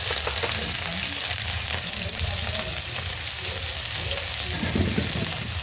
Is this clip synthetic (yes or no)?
no